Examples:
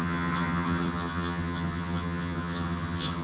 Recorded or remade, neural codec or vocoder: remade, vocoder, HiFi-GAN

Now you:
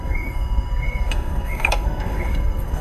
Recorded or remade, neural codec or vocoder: remade, codec, SNAC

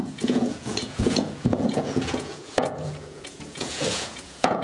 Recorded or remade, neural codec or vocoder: remade, vocoder, Vocos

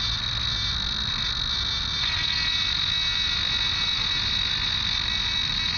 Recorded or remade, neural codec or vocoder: recorded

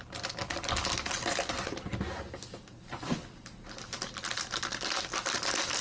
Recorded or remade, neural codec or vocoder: recorded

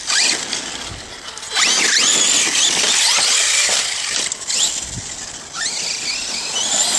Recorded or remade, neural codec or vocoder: recorded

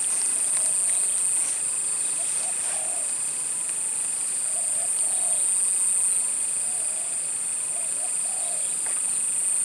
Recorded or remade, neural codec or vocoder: recorded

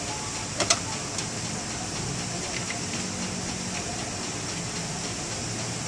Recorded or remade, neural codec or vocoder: recorded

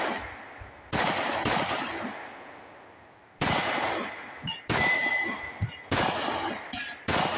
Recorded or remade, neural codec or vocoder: remade, vocoder, BigVGAN v2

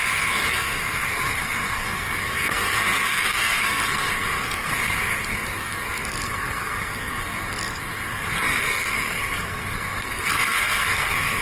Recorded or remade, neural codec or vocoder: remade, codec, SNAC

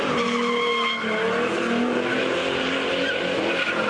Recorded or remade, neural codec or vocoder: recorded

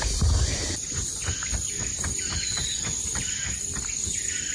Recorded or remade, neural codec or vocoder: recorded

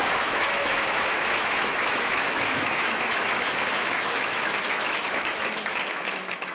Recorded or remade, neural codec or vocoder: remade, autoencoder, DAC-VAE